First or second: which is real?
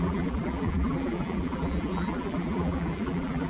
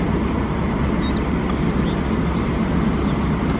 second